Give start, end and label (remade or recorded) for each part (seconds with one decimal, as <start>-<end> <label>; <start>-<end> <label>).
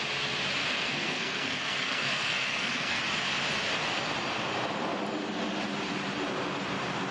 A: 0.0-0.6 recorded; 0.6-3.0 remade; 3.0-7.1 recorded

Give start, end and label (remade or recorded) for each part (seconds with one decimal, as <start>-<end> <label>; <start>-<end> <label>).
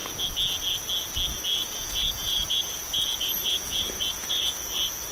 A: 0.0-1.5 recorded; 1.5-4.6 remade; 4.6-5.1 recorded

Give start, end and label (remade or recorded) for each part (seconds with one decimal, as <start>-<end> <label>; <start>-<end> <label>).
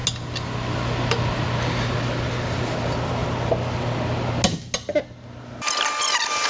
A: 0.0-6.5 recorded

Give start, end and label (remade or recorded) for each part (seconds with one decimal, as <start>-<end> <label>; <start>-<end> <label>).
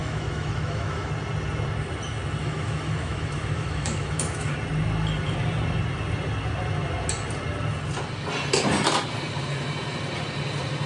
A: 0.0-1.1 remade; 1.1-2.4 recorded; 2.4-4.5 remade; 4.5-10.9 recorded